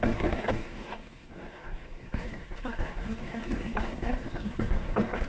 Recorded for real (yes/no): no